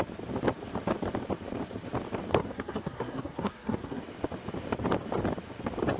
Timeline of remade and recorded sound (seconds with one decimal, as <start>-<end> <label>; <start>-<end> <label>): 0.0-2.3 recorded; 2.3-4.0 remade; 4.0-6.0 recorded